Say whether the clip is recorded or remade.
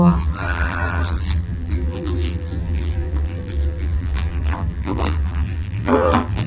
remade